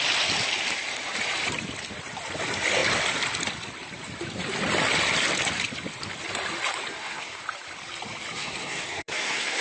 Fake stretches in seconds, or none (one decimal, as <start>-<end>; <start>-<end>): 6.9-7.4; 8.4-9.6